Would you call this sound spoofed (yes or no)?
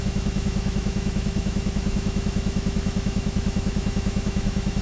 yes